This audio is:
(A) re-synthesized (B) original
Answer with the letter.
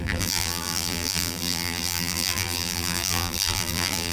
A